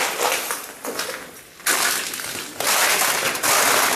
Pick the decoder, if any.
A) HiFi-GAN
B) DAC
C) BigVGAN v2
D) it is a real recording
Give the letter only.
D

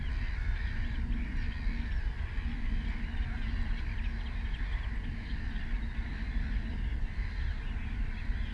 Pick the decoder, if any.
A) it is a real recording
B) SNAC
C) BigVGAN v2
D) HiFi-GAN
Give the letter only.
A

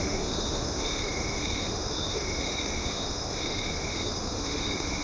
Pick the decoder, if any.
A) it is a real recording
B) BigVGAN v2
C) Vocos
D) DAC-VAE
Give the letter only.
D